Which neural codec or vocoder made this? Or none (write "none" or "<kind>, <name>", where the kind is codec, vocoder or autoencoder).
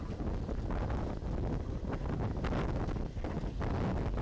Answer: none